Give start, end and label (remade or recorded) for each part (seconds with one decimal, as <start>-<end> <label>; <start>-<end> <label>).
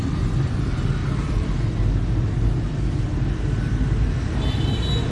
0.0-5.1 recorded